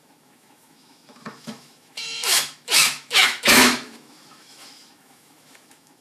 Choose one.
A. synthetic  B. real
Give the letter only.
A